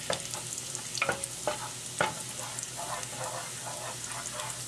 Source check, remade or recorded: recorded